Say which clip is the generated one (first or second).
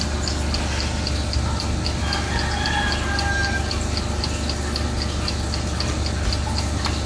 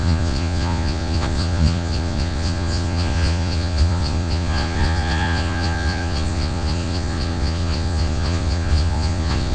second